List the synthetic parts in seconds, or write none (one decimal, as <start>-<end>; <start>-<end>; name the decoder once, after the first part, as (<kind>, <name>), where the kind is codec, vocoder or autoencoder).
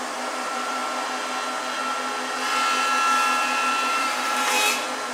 0.0-0.8 (vocoder, BigVGAN v2); 3.9-5.1